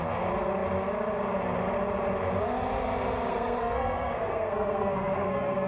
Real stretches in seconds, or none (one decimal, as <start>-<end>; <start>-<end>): 0.0-3.3